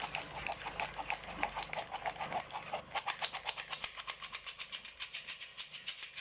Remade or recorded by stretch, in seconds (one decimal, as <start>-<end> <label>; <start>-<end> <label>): 0.0-5.5 recorded; 5.5-6.2 remade